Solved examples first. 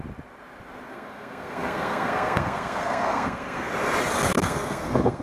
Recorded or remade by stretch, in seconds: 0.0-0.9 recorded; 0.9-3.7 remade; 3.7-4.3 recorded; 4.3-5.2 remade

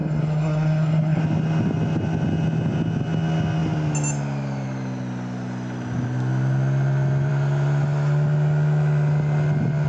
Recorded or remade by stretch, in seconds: 0.0-1.2 remade; 1.2-9.9 recorded

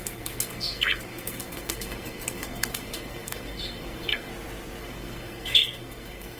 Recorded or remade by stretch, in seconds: 0.0-4.3 remade; 4.3-4.8 recorded; 4.8-6.4 remade

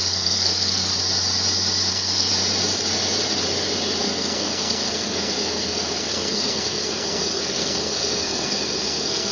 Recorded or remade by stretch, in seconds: 0.0-0.9 remade; 0.9-1.9 recorded; 1.9-2.3 remade; 2.3-4.0 recorded; 4.0-9.3 remade

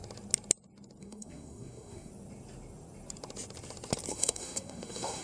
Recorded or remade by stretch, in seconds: 0.0-1.0 recorded; 1.0-2.1 remade; 2.1-4.1 recorded; 4.1-5.2 remade

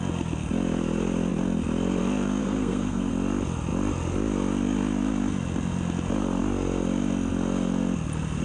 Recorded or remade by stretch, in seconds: 0.0-2.4 recorded; 2.4-3.1 remade; 3.1-8.4 recorded